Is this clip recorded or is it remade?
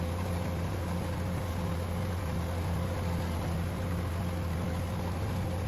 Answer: recorded